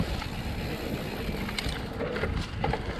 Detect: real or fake real